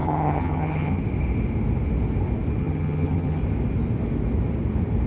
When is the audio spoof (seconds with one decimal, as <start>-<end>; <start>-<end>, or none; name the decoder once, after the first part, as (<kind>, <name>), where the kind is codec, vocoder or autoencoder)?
0.0-1.0 (vocoder, HiFi-GAN); 2.6-3.4